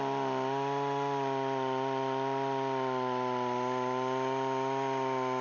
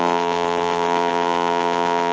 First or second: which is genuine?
first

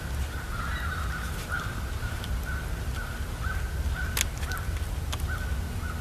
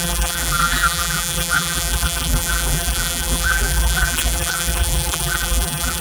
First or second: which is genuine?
first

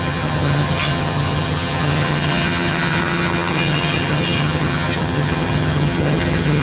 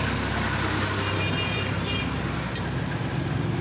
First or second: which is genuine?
second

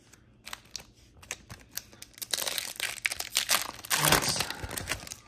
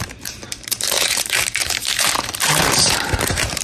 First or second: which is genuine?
first